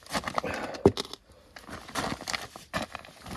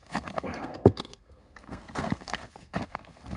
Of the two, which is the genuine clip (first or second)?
first